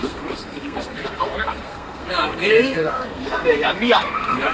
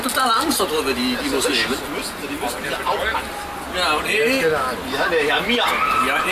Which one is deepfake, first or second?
first